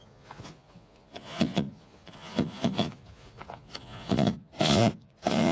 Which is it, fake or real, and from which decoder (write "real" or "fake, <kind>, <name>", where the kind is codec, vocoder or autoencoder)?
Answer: fake, vocoder, Vocos